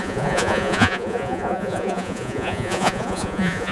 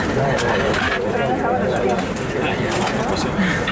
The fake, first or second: first